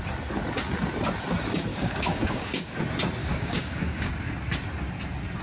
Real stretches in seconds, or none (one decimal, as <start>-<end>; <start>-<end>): 0.0-1.7; 2.8-3.2; 4.1-5.4